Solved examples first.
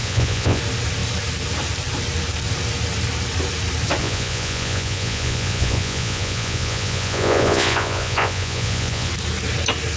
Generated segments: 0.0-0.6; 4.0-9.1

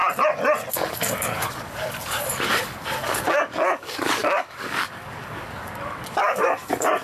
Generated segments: 0.7-7.0

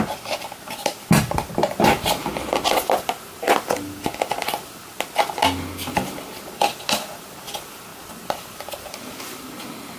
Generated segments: none

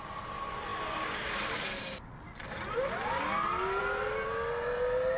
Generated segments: none